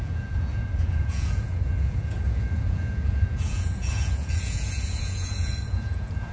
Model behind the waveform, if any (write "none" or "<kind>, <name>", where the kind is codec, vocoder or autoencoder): vocoder, Vocos